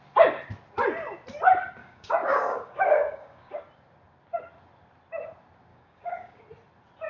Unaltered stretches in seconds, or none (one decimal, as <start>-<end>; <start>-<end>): 0.0-1.8; 3.6-5.7; 6.4-7.1